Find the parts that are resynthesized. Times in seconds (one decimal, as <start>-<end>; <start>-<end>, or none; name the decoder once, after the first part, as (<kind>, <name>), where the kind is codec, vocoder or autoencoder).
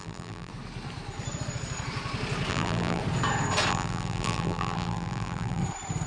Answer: 0.0-0.5 (vocoder, BigVGAN v2); 2.5-3.0; 3.7-5.6